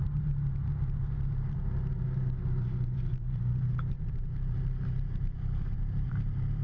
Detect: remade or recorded remade